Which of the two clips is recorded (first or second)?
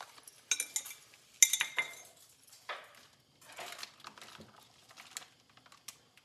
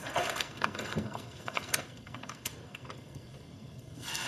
first